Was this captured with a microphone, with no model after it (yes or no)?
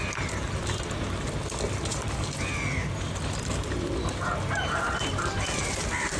yes